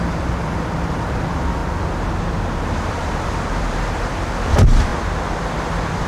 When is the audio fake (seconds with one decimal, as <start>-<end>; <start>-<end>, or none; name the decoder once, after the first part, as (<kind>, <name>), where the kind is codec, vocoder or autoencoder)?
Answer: 0.0-1.6 (vocoder, BigVGAN v2); 2.6-4.9; 5.4-6.1